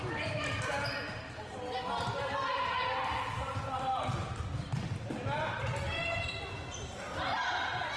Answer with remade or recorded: recorded